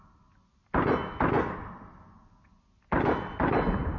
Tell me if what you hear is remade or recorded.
recorded